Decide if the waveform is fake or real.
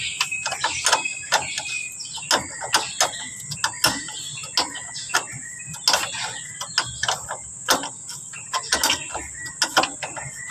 real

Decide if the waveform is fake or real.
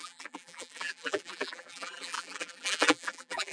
fake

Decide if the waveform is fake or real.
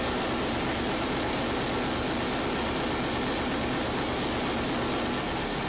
real